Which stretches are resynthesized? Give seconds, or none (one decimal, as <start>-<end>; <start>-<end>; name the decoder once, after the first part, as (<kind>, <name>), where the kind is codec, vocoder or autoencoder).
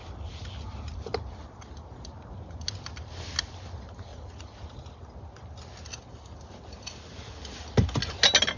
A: 4.1-4.9 (vocoder, Vocos)